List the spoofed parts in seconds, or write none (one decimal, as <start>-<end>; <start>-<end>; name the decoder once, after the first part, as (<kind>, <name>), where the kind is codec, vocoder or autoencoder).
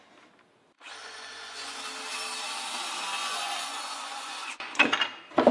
1.0-1.8 (vocoder, Vocos); 3.2-4.9